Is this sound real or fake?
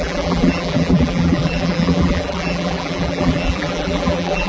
fake